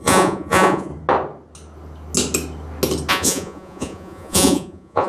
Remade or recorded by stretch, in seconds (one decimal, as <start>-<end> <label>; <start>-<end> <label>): 0.0-0.9 remade; 0.9-3.1 recorded; 3.1-5.1 remade